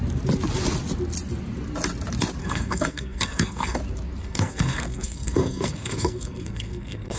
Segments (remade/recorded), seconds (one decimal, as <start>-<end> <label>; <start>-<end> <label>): 0.0-2.4 recorded; 2.4-3.8 remade; 3.8-4.2 recorded; 4.2-7.2 remade